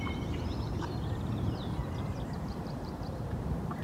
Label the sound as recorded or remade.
remade